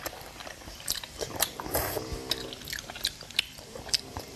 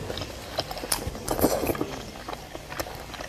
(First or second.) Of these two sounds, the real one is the second